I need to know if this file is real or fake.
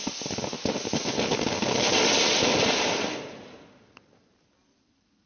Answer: real